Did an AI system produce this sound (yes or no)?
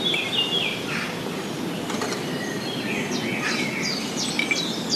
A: no